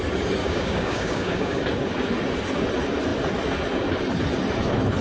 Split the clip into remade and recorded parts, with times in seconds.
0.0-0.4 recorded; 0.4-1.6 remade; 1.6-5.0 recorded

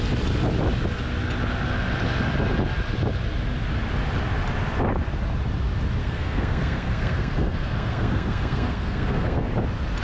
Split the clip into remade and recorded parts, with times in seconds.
0.0-6.0 recorded; 6.0-9.5 remade; 9.5-10.0 recorded

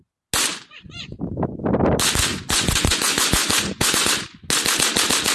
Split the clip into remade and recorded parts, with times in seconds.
0.0-0.5 recorded; 0.5-1.2 remade; 1.2-2.3 recorded; 2.3-4.1 remade; 4.1-5.3 recorded

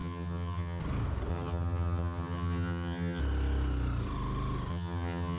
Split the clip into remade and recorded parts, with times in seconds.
0.0-0.8 remade; 0.8-1.3 recorded; 1.3-3.2 remade; 3.2-4.7 recorded; 4.7-5.4 remade

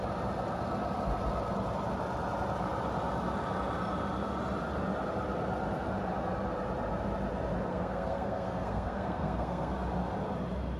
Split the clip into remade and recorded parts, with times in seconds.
0.0-7.7 recorded; 7.7-9.7 remade; 9.7-10.8 recorded